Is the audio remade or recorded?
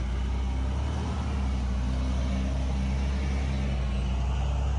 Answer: recorded